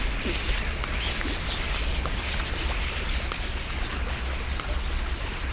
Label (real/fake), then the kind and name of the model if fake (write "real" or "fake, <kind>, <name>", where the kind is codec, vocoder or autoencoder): real